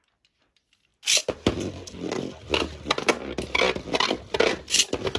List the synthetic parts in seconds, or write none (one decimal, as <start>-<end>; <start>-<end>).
none